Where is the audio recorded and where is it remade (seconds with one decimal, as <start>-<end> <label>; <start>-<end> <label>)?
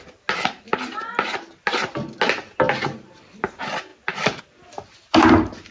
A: 0.0-5.7 recorded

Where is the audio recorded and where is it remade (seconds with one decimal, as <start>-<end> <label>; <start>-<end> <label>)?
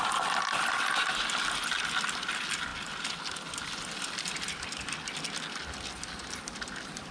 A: 0.0-7.1 recorded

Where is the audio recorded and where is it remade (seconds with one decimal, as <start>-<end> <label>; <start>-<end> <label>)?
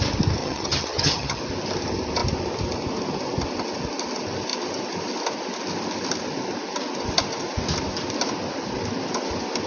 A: 0.0-0.4 recorded; 0.4-1.4 remade; 1.4-9.7 recorded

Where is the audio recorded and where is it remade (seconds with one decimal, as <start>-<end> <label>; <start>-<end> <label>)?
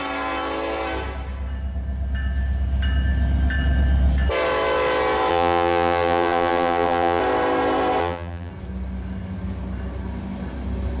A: 0.0-5.3 recorded; 5.3-7.2 remade; 7.2-8.0 recorded; 8.0-8.5 remade; 8.5-11.0 recorded